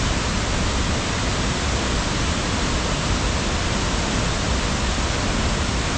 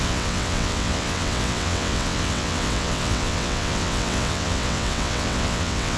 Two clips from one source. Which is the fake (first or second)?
second